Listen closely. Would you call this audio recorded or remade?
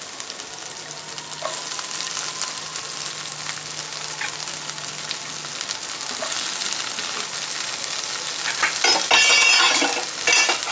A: recorded